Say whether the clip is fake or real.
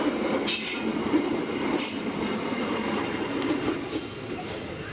real